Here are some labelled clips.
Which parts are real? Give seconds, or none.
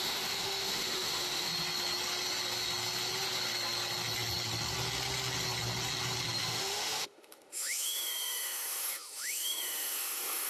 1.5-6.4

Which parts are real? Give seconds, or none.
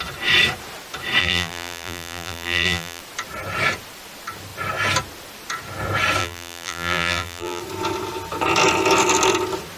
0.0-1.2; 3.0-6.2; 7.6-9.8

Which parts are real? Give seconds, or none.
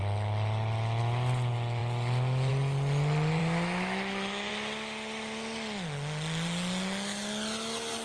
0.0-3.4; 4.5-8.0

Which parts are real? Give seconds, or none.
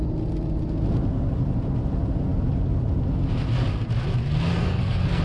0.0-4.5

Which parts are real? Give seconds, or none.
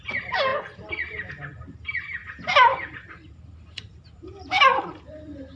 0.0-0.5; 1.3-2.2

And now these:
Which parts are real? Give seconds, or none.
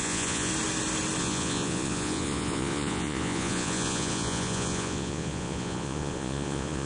0.5-1.2